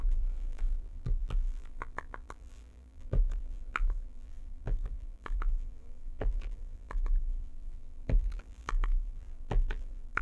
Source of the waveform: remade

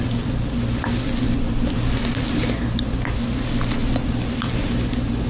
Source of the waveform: recorded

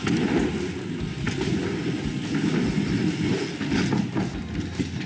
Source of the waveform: recorded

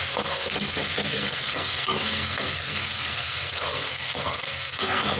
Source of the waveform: remade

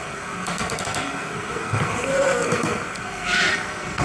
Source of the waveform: remade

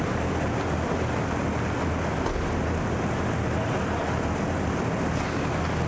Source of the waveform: recorded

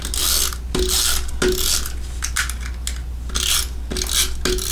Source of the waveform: recorded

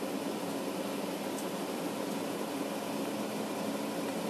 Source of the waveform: recorded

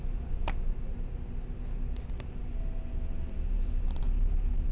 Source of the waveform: recorded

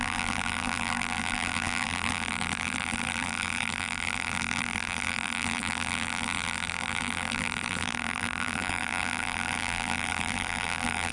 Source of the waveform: remade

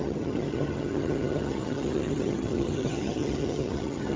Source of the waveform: remade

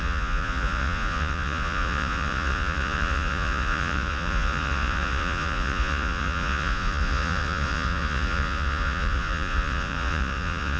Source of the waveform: remade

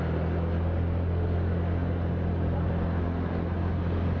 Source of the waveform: recorded